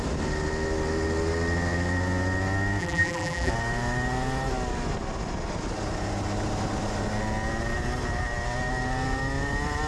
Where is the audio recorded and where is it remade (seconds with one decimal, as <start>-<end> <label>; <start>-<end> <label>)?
0.0-2.8 recorded; 2.8-3.5 remade; 3.5-9.9 recorded